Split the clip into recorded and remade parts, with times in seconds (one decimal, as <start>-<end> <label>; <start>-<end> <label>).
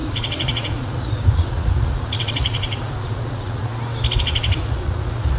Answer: 0.0-3.7 remade; 3.7-4.2 recorded; 4.2-5.4 remade